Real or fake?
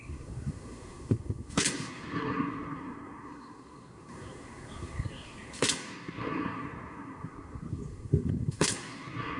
fake